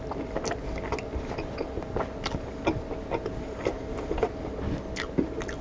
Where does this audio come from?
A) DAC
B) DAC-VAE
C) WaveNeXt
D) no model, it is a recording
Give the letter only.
D